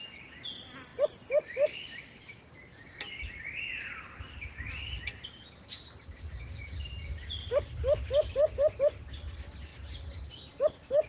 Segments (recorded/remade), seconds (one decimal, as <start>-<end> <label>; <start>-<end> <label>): 0.0-11.1 recorded